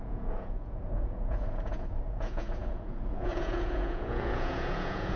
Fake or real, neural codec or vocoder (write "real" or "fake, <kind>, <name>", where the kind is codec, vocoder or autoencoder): fake, vocoder, Vocos